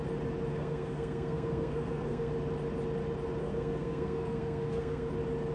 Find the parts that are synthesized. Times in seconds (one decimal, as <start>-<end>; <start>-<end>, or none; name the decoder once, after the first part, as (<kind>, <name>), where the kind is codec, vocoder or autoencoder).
0.5-2.3 (codec, SNAC); 3.4-5.1